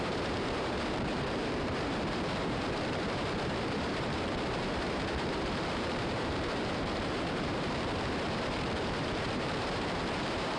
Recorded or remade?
remade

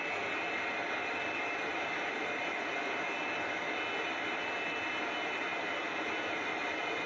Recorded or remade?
recorded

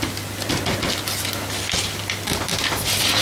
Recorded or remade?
recorded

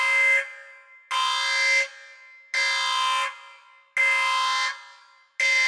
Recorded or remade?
recorded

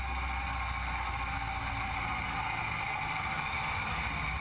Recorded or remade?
recorded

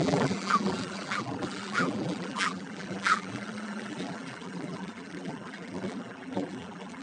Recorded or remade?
remade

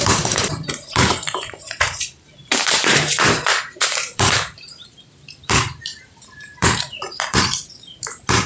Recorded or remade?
remade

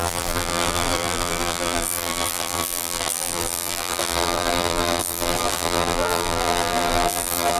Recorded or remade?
remade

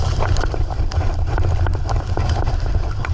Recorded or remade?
recorded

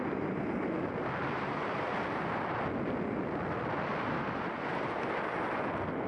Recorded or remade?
recorded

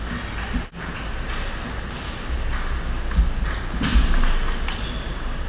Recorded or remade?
recorded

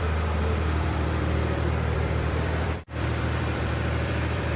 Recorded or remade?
remade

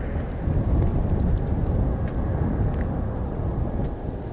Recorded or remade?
recorded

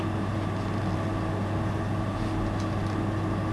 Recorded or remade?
recorded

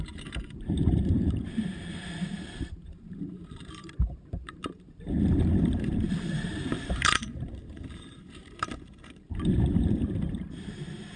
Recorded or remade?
remade